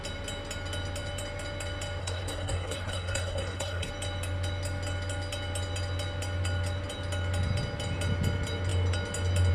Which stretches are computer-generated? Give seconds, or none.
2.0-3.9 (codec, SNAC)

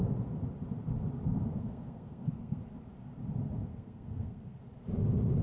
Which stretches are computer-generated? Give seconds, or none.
1.5-2.6 (codec, SNAC); 3.7-4.6

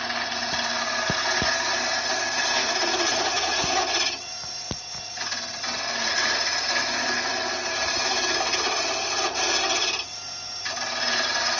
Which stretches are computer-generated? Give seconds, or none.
2.6-3.7 (vocoder, Vocos); 6.0-6.7

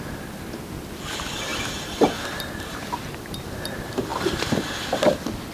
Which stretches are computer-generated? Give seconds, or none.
4.1-5.5 (vocoder, BigVGAN v2)

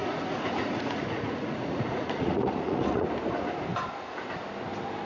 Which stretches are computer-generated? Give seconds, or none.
0.0-3.1 (vocoder, Vocos)

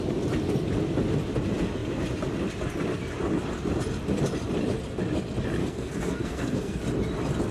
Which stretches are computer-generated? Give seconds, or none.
5.6-6.8 (codec, SNAC)

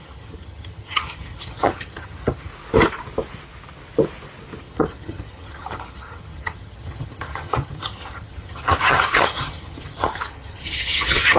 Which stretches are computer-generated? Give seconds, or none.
0.0-2.5 (vocoder, HiFi-GAN); 4.6-11.4

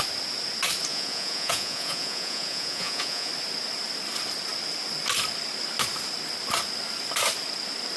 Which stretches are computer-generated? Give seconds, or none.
0.9-3.3 (vocoder, Vocos)